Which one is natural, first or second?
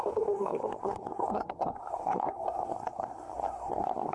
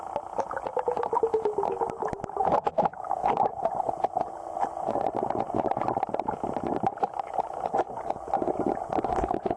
second